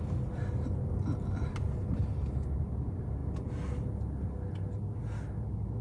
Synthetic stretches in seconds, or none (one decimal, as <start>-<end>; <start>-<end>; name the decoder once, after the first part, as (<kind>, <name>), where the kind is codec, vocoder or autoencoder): none